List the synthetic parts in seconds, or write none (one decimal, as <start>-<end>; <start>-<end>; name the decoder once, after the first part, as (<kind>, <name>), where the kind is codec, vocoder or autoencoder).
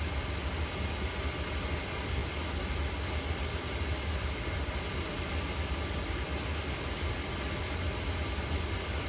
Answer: none